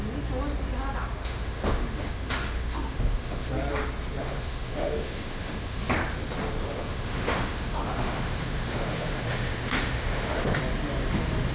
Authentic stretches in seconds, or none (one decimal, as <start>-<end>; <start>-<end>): 0.0-1.2; 3.5-4.2; 5.8-6.6; 10.6-11.5